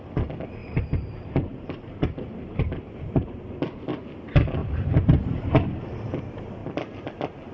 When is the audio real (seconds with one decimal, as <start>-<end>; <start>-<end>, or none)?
0.0-0.6; 3.4-4.6; 5.4-6.6; 7.1-7.5